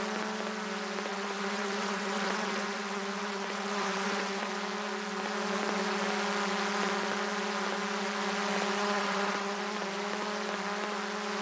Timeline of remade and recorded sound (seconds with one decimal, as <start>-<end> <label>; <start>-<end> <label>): 0.0-1.1 recorded; 1.1-4.5 remade; 4.5-8.8 recorded; 8.8-9.6 remade; 9.6-11.4 recorded